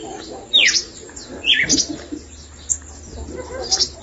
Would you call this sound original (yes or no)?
yes